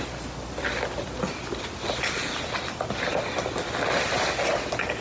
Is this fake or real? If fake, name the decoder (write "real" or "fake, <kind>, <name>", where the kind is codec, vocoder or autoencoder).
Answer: real